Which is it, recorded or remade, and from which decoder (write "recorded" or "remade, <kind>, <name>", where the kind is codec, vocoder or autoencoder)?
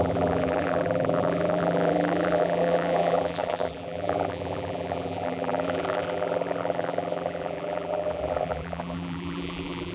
remade, vocoder, BigVGAN v2